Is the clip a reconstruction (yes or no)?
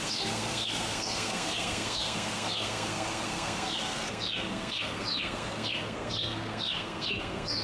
yes